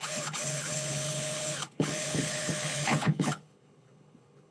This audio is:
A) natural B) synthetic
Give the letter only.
B